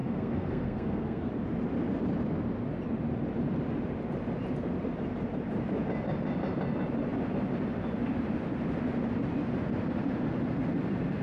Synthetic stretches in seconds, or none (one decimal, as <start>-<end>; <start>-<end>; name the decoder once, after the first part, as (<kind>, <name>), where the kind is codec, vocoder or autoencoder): 0.0-1.3 (codec, SNAC)